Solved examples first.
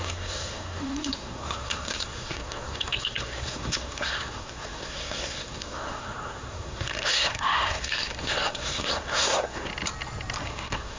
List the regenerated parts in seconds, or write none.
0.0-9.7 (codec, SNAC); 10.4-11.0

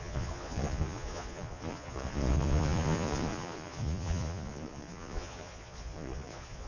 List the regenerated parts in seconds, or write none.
0.0-6.7 (vocoder, Vocos)

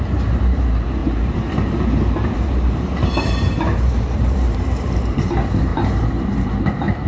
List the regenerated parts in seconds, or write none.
1.0-5.3 (vocoder, BigVGAN v2); 5.7-7.1

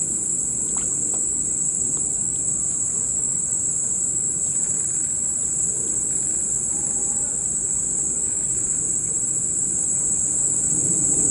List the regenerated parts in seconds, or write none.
3.5-5.6 (vocoder, BigVGAN v2)

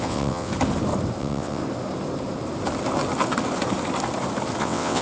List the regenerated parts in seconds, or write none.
0.0-0.5 (vocoder, WaveNeXt); 1.2-1.6; 4.6-5.0

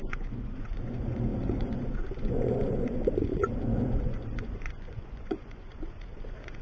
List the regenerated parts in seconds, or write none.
0.0-6.6 (vocoder, Vocos)

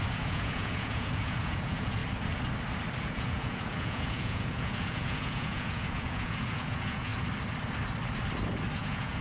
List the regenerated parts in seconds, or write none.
0.0-2.0 (vocoder, Vocos); 3.0-7.1; 8.7-9.2